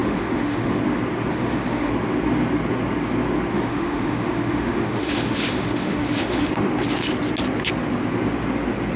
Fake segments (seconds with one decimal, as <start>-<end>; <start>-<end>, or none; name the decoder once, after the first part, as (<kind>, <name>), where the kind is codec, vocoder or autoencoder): 0.0-0.8 (autoencoder, DAC-VAE); 1.3-1.9; 3.5-6.5